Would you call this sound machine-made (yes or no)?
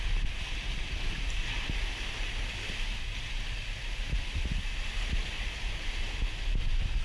no